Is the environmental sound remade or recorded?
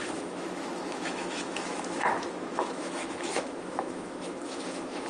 remade